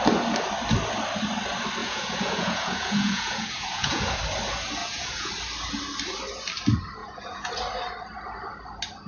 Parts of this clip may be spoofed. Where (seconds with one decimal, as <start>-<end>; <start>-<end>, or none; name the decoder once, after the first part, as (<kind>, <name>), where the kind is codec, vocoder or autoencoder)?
1.8-4.2 (vocoder, Vocos); 4.8-5.3; 7.0-7.5